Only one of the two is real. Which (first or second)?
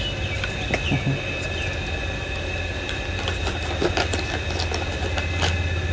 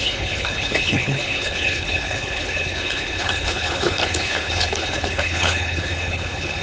first